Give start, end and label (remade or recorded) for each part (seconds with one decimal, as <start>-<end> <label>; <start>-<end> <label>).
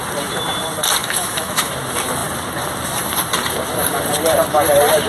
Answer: 0.0-1.0 recorded; 1.0-1.7 remade; 1.7-5.1 recorded